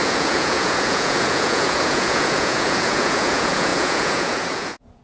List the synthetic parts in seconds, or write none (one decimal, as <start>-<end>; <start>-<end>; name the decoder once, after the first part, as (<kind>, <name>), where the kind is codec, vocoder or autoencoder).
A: 0.0-5.0 (vocoder, Vocos)